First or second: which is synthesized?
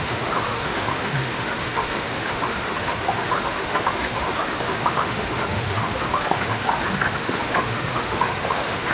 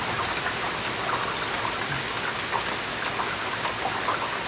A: first